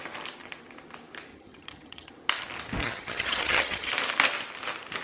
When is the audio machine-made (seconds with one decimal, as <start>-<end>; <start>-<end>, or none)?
1.3-2.1; 2.8-3.9